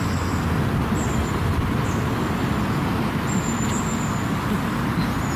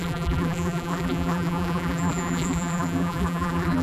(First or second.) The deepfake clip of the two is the second